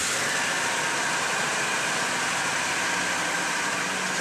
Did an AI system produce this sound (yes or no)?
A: no